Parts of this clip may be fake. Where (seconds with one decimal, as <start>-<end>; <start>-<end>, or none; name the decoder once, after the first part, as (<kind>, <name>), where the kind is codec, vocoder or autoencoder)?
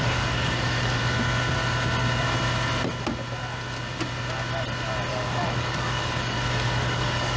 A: 0.0-1.0 (codec, DAC); 5.1-7.4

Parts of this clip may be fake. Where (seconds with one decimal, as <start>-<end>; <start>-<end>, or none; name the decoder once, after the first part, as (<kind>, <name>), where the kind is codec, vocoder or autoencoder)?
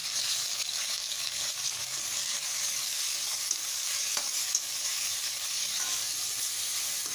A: 0.0-6.0 (codec, DAC)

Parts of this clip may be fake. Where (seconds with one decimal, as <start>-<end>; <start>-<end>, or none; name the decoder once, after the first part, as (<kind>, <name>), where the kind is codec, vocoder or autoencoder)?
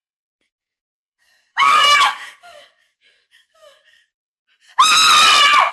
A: 0.0-4.4 (codec, DAC)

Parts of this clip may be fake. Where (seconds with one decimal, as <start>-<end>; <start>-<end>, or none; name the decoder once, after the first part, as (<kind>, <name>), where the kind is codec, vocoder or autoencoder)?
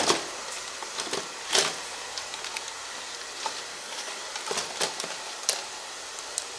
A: 3.7-4.2 (codec, DAC)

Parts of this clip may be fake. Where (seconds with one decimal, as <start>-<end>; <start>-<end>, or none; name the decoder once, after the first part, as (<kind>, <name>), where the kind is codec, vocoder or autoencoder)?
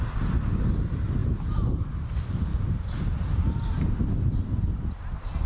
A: none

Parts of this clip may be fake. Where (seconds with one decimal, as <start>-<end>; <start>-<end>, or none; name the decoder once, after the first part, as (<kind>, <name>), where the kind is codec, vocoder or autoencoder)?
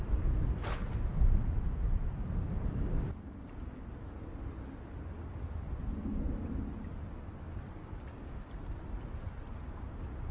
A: 7.8-8.5 (codec, DAC)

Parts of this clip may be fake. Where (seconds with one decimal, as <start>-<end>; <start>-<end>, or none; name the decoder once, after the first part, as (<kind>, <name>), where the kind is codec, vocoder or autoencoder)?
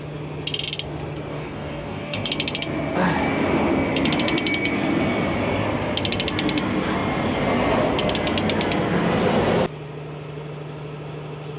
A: 1.3-2.3 (codec, DAC)